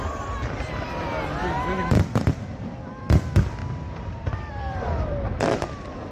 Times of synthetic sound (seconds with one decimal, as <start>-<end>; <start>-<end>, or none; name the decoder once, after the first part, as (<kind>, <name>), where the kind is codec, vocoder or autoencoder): 0.0-3.6 (vocoder, BigVGAN v2); 4.5-6.1